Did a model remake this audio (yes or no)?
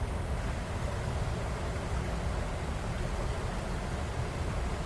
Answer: no